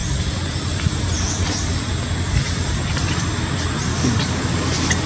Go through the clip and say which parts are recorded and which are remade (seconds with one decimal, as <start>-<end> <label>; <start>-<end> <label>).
0.0-3.9 recorded; 3.9-4.4 remade; 4.4-5.1 recorded